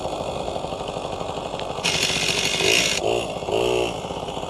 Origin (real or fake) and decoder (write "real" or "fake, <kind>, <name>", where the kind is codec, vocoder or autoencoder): real